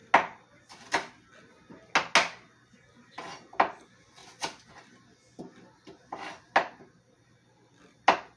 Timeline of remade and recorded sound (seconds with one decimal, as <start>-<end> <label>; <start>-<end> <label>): 0.0-8.4 recorded